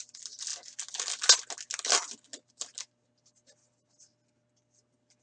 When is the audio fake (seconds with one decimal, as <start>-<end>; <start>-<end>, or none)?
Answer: none